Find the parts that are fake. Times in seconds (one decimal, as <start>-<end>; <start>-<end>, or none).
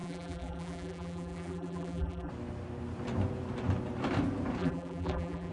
0.0-2.3; 4.6-5.5